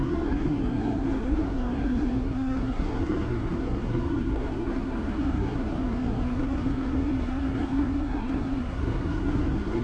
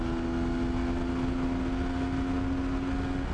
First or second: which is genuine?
second